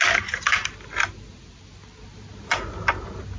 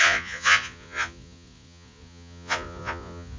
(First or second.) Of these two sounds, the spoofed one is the second